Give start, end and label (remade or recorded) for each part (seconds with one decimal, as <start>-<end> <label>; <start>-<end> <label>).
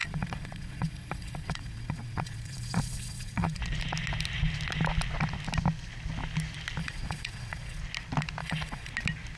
0.0-3.6 remade; 3.6-6.8 recorded; 6.8-7.8 remade; 7.8-8.4 recorded; 8.4-8.9 remade; 8.9-9.4 recorded